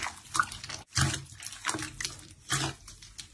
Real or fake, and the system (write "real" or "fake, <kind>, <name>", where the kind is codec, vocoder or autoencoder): real